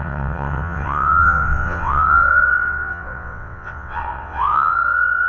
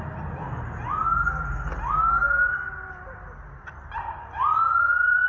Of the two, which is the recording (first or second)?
second